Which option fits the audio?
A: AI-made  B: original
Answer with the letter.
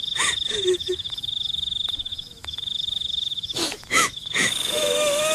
A